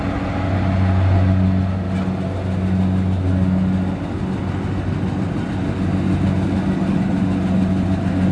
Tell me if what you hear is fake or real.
real